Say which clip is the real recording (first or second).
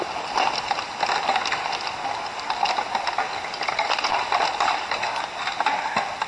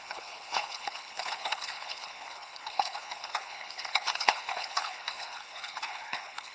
first